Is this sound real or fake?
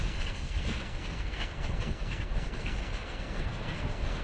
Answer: fake